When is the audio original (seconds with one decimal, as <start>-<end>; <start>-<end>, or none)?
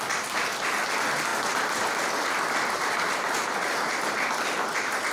0.0-5.1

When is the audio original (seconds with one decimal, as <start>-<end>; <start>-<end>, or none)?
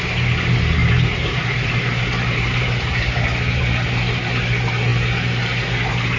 0.0-0.8; 3.6-6.2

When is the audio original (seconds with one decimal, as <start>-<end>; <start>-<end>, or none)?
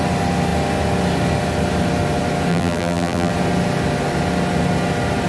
0.0-2.5; 3.3-5.3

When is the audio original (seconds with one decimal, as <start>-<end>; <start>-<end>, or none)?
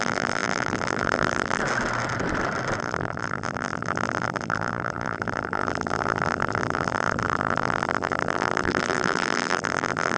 1.6-2.8